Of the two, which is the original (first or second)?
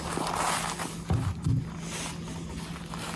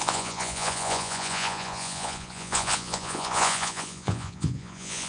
first